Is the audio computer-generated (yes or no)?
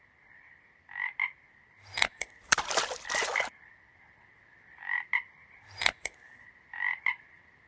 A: yes